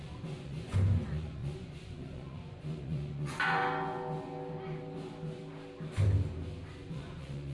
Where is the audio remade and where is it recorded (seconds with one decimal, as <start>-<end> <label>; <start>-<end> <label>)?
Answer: 0.0-3.6 remade; 3.6-6.7 recorded; 6.7-7.5 remade